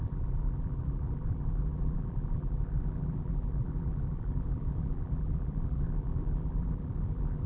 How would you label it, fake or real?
fake